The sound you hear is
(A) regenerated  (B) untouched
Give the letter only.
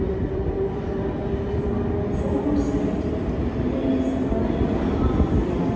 B